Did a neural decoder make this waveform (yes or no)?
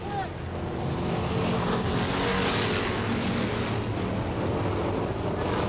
no